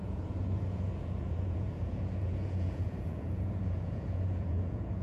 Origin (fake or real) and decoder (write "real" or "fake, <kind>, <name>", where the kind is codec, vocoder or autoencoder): fake, vocoder, Vocos